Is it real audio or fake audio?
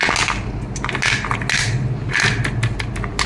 real